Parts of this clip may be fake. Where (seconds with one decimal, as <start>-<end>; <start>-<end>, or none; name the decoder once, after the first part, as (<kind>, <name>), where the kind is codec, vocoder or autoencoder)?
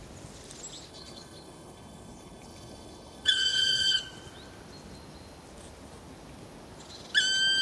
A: 0.9-4.0 (codec, HILCodec)